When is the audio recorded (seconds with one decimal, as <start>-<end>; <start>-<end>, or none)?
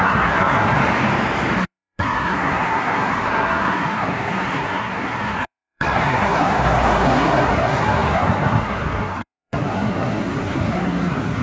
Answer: 0.8-1.6